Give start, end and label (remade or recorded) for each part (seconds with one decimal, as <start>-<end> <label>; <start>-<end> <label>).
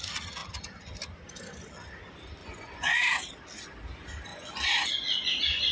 0.0-2.4 recorded; 2.4-3.0 remade; 3.0-4.3 recorded; 4.3-5.3 remade; 5.3-5.7 recorded